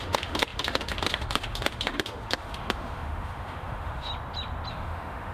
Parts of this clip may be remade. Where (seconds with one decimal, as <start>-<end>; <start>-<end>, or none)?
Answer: 0.0-4.1; 4.7-5.3